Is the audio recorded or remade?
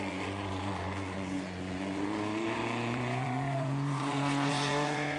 remade